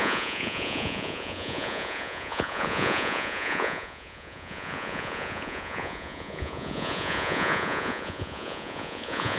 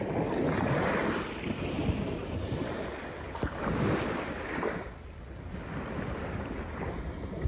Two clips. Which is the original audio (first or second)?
second